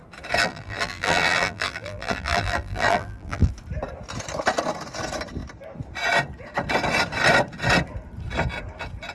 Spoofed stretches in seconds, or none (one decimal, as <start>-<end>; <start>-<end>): 0.4-3.5